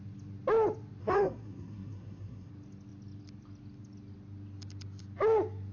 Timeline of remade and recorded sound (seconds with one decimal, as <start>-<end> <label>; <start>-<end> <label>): 0.0-1.0 recorded; 1.0-2.5 remade; 2.5-5.7 recorded